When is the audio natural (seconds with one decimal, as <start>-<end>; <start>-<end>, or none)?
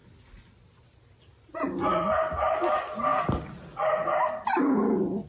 0.0-3.1; 4.6-5.3